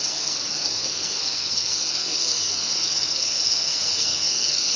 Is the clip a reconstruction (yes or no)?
yes